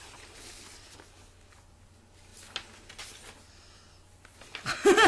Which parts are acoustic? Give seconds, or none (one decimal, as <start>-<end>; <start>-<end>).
0.0-5.1